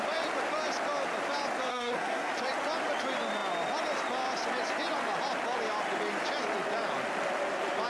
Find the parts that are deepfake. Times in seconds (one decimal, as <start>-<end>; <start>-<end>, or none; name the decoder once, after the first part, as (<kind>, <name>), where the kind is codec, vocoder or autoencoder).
1.7-2.3 (codec, SNAC)